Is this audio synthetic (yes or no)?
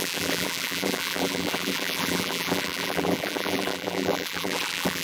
yes